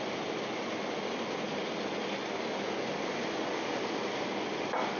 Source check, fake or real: real